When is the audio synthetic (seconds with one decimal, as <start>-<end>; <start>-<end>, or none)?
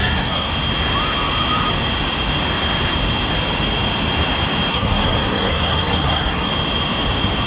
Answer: 0.0-0.5; 4.7-6.5